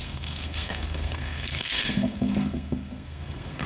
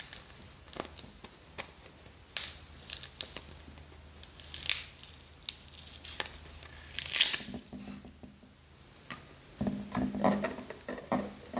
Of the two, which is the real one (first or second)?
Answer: second